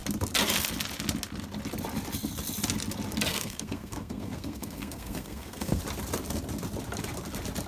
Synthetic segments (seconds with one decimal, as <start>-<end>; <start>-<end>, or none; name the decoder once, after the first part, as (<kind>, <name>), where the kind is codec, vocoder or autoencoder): 3.3-5.8 (codec, SNAC)